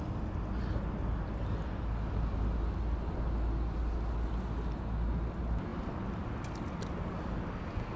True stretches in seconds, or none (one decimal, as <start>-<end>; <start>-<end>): 0.0-8.0